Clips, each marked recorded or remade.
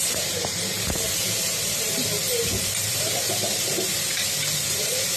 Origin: remade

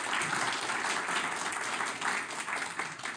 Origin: recorded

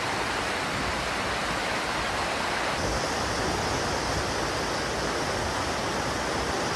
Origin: recorded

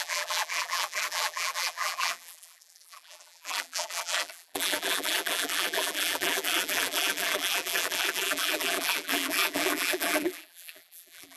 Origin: remade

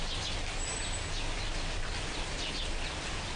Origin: recorded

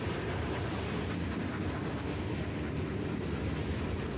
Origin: recorded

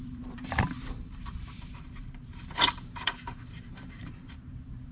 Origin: remade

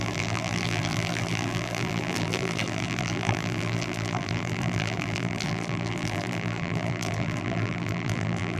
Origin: remade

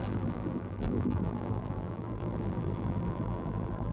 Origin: remade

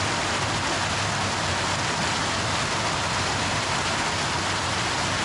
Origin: recorded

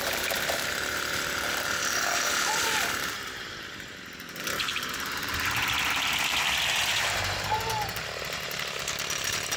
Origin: remade